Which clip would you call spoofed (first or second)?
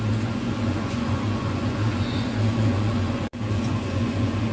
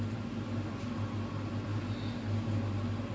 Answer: first